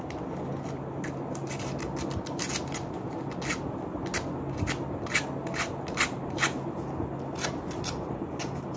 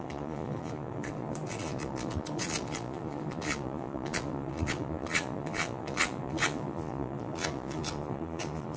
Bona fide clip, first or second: first